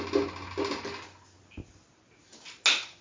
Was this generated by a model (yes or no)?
no